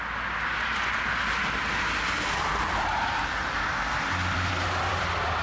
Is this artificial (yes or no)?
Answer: yes